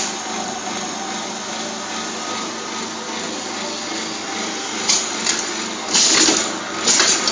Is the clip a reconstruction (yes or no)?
no